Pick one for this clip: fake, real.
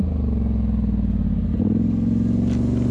real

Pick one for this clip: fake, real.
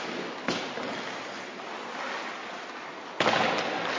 real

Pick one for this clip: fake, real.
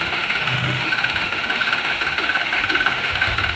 fake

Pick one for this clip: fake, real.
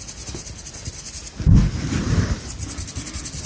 real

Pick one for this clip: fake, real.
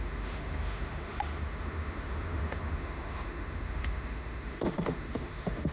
fake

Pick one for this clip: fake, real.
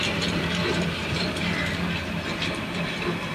real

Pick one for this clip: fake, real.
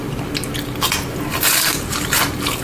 real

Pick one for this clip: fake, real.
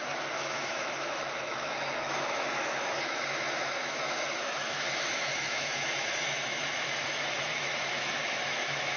fake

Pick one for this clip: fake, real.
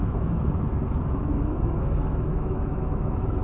fake